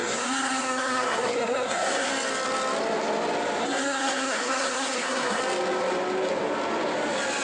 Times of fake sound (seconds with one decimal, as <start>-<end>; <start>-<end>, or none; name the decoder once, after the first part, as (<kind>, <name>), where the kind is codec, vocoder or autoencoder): 0.0-2.1 (codec, SNAC); 3.6-5.4